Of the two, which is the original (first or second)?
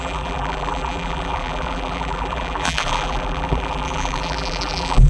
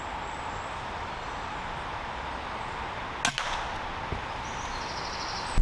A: second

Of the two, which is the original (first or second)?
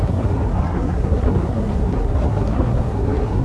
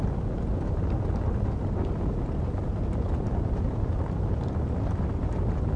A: second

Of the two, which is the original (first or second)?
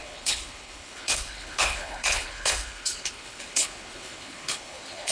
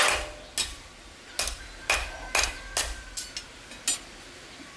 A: second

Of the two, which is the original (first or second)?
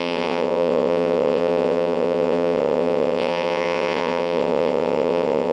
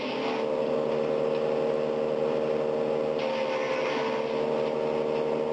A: second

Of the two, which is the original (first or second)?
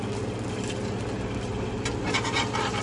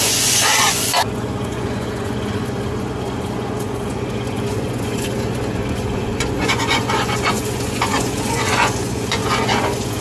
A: first